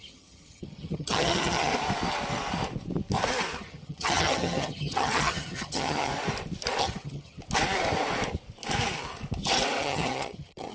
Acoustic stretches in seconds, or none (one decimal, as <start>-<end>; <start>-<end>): 1.7-3.6; 6.1-6.8; 7.4-9.8